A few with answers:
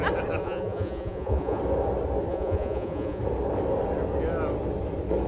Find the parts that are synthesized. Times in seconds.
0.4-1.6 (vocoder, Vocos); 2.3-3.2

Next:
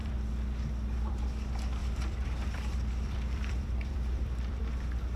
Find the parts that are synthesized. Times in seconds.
0.0-1.1 (vocoder, BigVGAN v2); 1.8-4.6

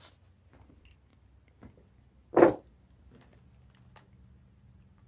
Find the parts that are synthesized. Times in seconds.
none

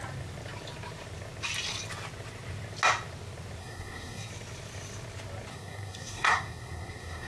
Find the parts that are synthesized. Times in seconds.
3.6-4.3 (codec, SNAC); 5.5-7.3

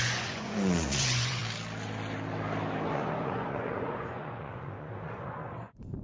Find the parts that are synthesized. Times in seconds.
0.0-1.4 (vocoder, Vocos); 2.9-6.0